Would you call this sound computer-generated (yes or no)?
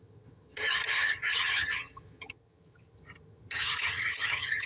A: yes